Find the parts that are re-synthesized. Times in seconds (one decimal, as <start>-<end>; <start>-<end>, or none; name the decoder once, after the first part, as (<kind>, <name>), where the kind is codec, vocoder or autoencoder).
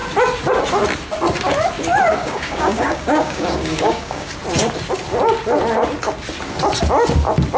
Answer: 2.2-4.3 (codec, DAC)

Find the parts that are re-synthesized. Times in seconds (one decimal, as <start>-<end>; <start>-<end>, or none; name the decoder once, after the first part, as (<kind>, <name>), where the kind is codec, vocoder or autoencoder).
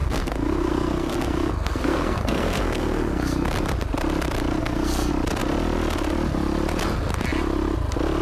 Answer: 0.0-3.5 (codec, SNAC); 4.6-5.1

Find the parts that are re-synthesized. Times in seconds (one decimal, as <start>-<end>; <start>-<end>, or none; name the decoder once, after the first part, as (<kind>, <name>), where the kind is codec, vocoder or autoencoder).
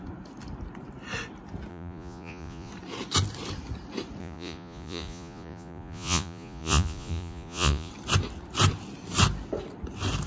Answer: 1.7-2.7 (vocoder, Vocos); 4.2-7.9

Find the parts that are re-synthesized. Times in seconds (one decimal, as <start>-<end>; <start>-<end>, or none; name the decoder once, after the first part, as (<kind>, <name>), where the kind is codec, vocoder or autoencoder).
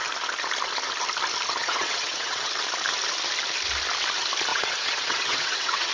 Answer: 1.6-2.5 (vocoder, WaveNeXt); 4.5-5.9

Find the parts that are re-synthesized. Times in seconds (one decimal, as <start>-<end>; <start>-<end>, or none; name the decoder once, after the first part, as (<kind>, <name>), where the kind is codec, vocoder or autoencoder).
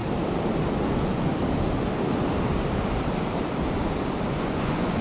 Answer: 0.8-1.3 (vocoder, Vocos); 4.3-5.0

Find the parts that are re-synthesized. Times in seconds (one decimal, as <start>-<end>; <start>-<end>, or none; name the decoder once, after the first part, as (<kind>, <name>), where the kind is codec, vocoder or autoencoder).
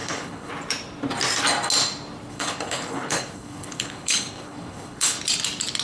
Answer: 0.0-0.5 (codec, HILCodec); 2.3-5.2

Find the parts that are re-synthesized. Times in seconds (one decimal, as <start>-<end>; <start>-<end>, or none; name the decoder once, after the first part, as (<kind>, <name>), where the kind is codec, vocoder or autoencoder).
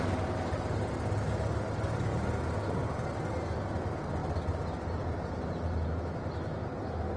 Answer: none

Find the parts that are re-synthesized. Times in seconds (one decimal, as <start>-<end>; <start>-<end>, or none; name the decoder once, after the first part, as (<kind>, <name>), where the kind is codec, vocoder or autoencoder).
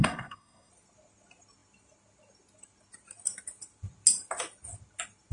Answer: 0.0-0.7 (codec, SNAC)